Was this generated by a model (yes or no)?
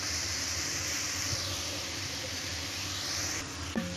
yes